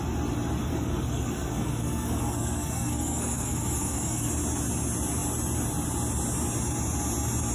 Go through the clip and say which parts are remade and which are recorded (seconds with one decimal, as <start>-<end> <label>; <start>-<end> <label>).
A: 0.0-0.6 recorded; 0.6-4.3 remade; 4.3-7.5 recorded